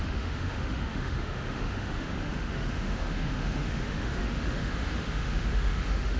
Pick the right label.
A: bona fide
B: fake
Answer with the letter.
B